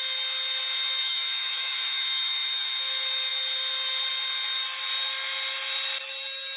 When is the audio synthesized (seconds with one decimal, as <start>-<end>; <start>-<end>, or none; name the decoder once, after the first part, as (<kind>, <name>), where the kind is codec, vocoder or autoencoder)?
1.0-2.8 (autoencoder, DAC-VAE)